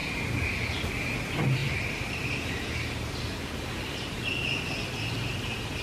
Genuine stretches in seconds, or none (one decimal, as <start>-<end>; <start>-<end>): 0.0-1.6; 5.1-5.8